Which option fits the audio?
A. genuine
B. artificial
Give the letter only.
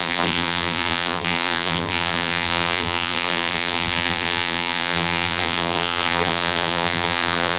B